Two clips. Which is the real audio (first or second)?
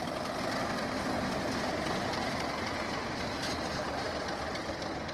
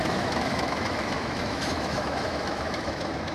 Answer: first